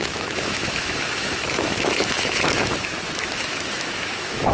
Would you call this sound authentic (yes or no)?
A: no